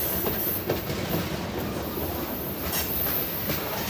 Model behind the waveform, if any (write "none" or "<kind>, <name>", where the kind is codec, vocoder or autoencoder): none